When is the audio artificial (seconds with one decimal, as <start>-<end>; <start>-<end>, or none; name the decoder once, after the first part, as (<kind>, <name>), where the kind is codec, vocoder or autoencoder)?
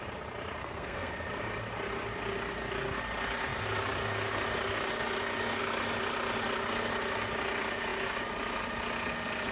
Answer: 0.6-1.1 (codec, SNAC)